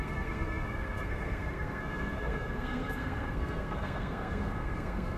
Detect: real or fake fake